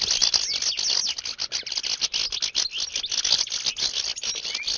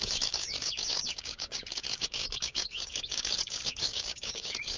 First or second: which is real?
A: first